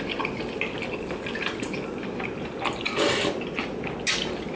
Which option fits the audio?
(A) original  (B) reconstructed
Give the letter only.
A